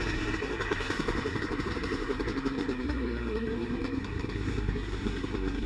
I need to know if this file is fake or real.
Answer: fake